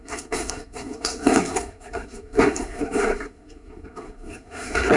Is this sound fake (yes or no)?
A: yes